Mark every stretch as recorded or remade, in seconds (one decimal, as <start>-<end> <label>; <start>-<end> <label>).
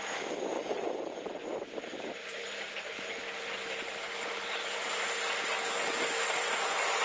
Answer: 0.0-7.0 recorded